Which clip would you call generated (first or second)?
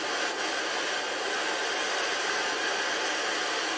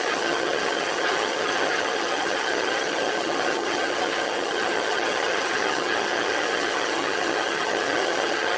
second